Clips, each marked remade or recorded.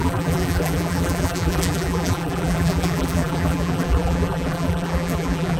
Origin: remade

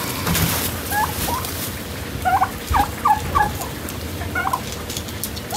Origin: recorded